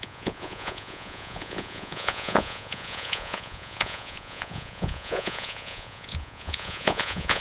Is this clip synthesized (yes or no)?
yes